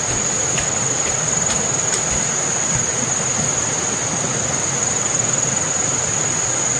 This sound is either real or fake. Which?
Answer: real